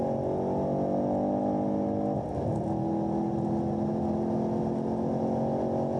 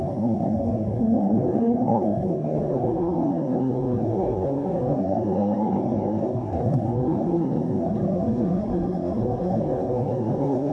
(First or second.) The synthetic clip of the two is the second